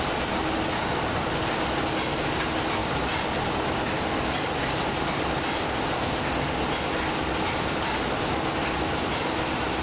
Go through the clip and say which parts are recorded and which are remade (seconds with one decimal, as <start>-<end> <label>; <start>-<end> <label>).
0.0-9.8 recorded